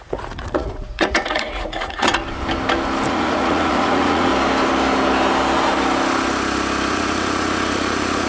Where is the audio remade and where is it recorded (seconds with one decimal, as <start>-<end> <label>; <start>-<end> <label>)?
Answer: 0.0-2.2 remade; 2.2-3.1 recorded; 3.1-4.3 remade; 4.3-6.9 recorded; 6.9-8.3 remade